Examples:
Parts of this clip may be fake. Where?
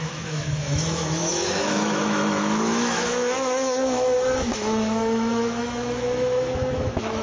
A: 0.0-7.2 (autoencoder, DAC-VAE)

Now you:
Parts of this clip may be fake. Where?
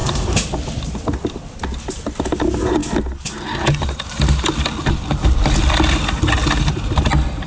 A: none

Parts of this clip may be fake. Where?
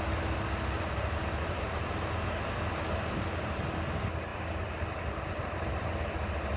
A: 1.2-3.6 (vocoder, BigVGAN v2)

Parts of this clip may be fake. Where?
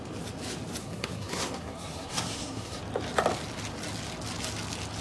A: 0.8-2.8 (codec, SNAC)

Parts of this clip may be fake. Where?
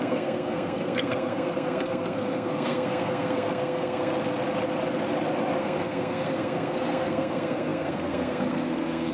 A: 0.0-4.1 (codec, SNAC); 5.6-9.1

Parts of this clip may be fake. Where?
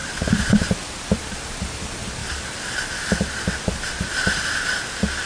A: 0.0-1.6 (vocoder, BigVGAN v2); 2.2-5.3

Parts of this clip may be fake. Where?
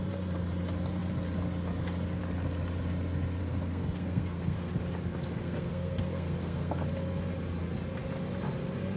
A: 3.4-4.7 (codec, SNAC); 5.4-6.9